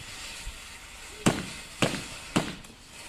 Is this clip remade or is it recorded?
recorded